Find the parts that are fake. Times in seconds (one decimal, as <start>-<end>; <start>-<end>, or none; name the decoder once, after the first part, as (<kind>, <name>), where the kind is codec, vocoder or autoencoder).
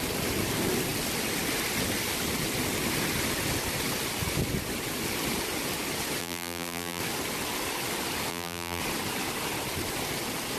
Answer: 6.2-7.0 (vocoder, BigVGAN v2); 8.3-8.8